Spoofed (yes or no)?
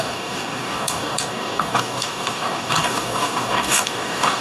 yes